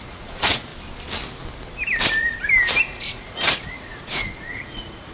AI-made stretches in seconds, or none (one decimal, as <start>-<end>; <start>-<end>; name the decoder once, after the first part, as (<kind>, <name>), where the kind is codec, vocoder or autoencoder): 0.0-0.7 (vocoder, Vocos); 2.9-5.1